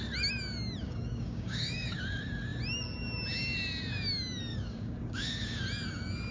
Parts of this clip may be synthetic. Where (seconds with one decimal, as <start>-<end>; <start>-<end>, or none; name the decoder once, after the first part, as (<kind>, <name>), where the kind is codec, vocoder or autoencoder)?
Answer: 0.8-2.0 (codec, DAC); 4.5-5.6